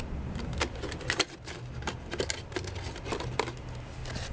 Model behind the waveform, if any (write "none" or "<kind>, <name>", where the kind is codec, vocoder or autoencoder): none